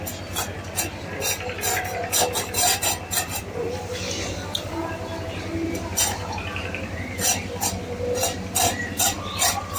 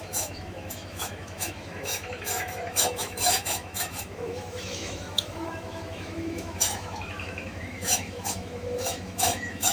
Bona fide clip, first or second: first